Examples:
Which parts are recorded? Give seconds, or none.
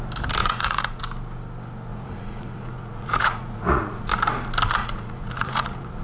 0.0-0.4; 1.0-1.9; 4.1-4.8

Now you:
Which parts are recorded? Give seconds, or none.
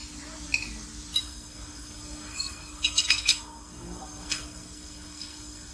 0.0-1.2